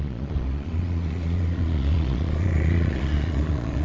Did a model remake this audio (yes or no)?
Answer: yes